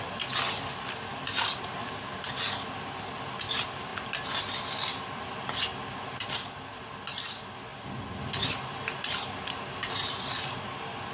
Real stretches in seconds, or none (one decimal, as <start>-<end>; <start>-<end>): 0.0-7.7